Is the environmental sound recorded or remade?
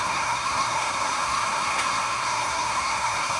remade